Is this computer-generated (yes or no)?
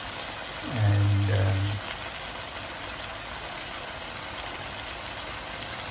no